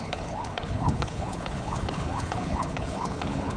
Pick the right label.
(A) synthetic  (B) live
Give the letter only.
A